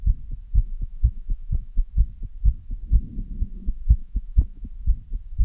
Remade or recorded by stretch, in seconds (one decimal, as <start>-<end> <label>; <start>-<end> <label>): 0.0-0.6 recorded; 0.6-1.9 remade; 1.9-3.4 recorded; 3.4-4.7 remade; 4.7-5.4 recorded